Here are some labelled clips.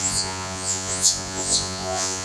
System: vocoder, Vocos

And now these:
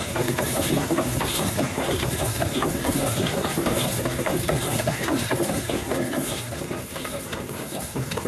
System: codec, SNAC